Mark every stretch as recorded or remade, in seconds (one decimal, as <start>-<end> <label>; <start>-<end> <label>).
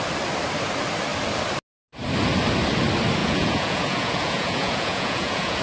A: 0.0-3.2 recorded; 3.2-5.6 remade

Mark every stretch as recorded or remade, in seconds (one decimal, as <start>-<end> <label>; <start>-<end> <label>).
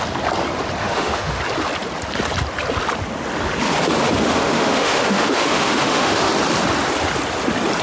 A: 0.0-0.8 recorded; 0.8-1.4 remade; 1.4-4.2 recorded; 4.2-6.3 remade; 6.3-7.8 recorded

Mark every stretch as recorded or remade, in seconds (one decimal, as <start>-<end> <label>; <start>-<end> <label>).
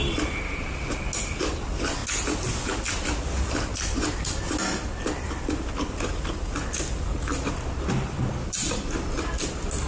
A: 0.0-9.9 recorded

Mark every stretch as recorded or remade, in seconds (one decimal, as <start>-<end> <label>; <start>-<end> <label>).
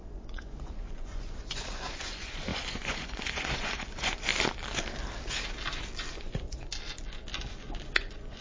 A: 0.0-4.3 remade; 4.3-6.1 recorded; 6.1-6.7 remade; 6.7-7.5 recorded; 7.5-8.4 remade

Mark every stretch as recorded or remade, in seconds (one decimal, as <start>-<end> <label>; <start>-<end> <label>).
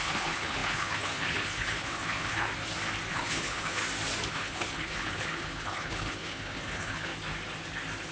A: 0.0-2.5 remade; 2.5-3.1 recorded; 3.1-3.8 remade; 3.8-4.3 recorded; 4.3-7.1 remade; 7.1-8.1 recorded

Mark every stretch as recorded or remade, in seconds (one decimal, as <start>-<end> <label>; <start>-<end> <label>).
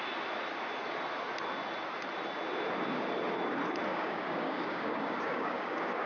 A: 0.0-3.9 recorded; 3.9-6.1 remade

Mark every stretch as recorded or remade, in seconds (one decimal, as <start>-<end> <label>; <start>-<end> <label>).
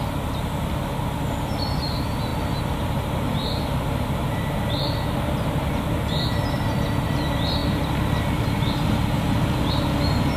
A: 0.0-10.4 recorded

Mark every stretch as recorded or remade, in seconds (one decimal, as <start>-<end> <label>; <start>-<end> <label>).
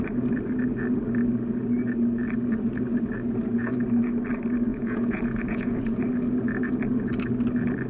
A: 0.0-4.7 recorded; 4.7-6.0 remade; 6.0-7.9 recorded